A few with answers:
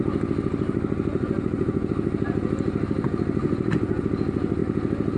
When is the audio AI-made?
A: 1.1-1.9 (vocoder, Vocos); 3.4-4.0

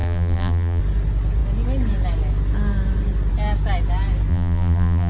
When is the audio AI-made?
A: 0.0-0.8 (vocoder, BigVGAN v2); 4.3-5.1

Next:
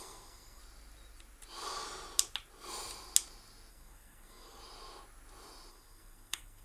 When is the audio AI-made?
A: 0.0-0.6 (codec, SNAC); 3.7-4.6; 5.7-6.6

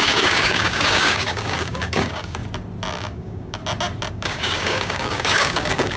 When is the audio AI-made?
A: 0.0-2.4 (codec, DAC); 2.9-3.6; 4.1-6.0